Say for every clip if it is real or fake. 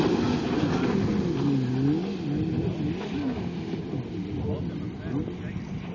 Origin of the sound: real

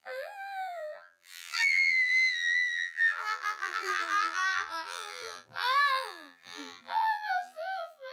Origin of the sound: fake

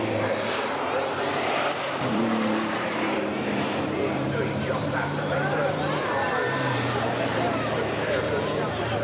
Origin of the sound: fake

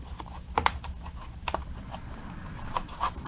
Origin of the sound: fake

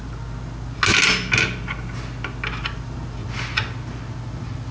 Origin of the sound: real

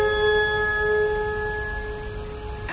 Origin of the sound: real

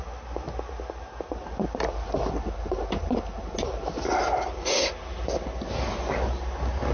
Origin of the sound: real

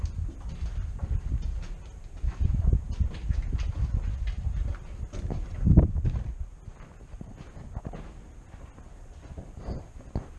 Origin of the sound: real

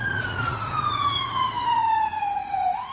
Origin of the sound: fake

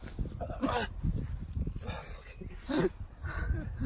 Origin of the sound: real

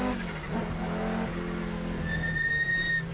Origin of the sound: real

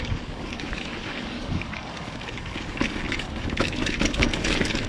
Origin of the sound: fake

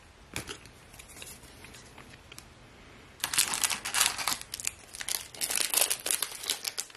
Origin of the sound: real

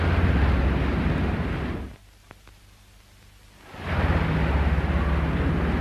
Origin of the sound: real